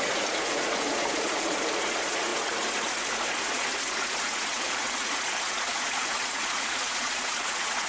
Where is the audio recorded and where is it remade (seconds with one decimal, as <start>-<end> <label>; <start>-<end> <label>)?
0.0-7.9 remade